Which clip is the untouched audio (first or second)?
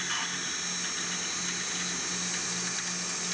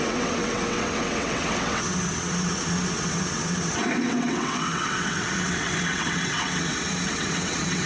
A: first